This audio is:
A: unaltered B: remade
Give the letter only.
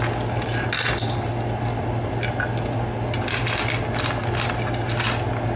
A